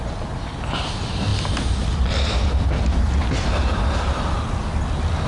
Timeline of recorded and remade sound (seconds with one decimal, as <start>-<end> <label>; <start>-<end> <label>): 0.0-5.3 recorded